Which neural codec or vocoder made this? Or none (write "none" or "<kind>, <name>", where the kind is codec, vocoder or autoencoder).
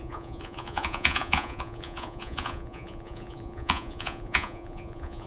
vocoder, Vocos